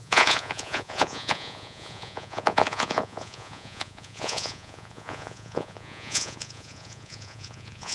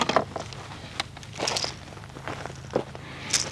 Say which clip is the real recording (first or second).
second